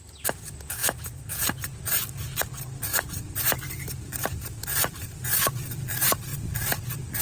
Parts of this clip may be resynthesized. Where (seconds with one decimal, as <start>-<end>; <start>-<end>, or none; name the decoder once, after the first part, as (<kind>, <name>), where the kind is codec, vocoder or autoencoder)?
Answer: 2.9-5.3 (vocoder, BigVGAN v2)